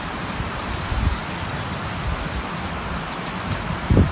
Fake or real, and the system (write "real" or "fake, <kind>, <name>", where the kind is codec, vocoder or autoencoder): fake, vocoder, BigVGAN v2